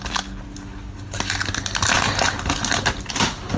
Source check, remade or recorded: recorded